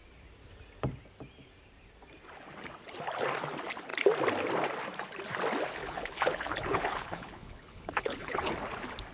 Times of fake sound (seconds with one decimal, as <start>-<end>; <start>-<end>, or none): 5.8-8.5